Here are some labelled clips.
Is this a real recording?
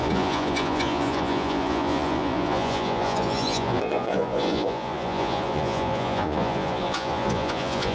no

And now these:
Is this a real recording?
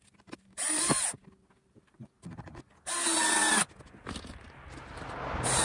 yes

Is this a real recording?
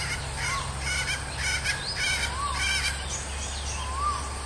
yes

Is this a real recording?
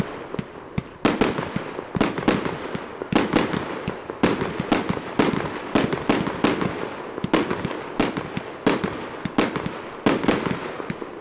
yes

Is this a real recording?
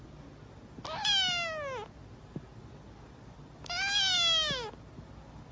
yes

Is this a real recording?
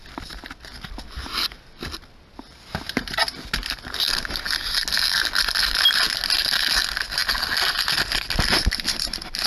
yes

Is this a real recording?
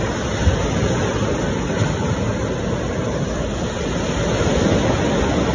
yes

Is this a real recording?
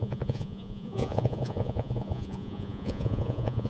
no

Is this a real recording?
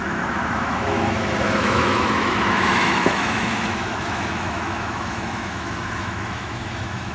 no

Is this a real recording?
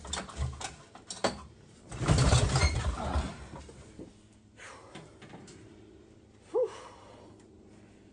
no